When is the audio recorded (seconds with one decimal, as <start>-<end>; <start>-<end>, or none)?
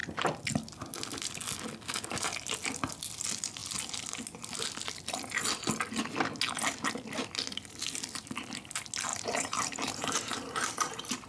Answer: 0.0-9.1